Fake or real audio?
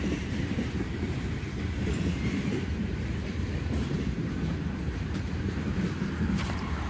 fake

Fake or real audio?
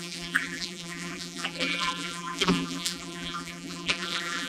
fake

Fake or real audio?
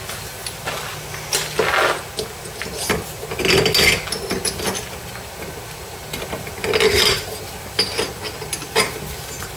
real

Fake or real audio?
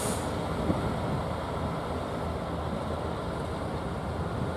real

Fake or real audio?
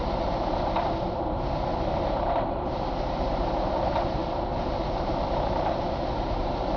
fake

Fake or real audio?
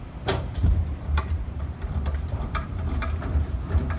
fake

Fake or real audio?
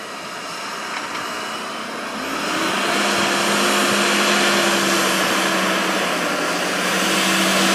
real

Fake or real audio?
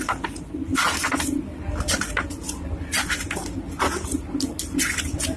real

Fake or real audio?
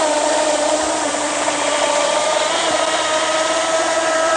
fake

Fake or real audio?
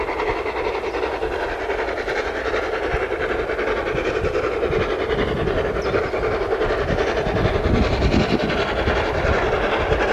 real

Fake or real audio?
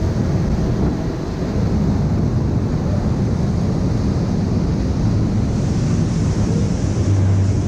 real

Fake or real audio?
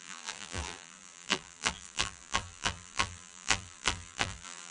fake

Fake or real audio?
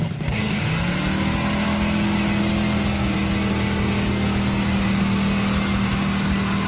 real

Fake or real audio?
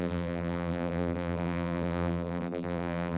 fake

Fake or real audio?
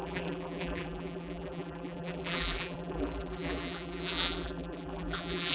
fake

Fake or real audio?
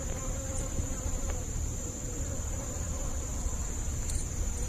fake